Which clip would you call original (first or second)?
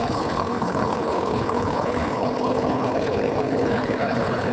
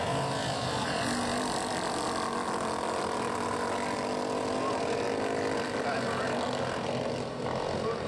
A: second